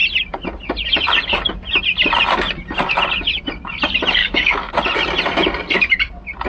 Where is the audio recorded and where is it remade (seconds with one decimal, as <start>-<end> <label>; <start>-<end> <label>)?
0.0-4.2 recorded; 4.2-4.7 remade; 4.7-6.5 recorded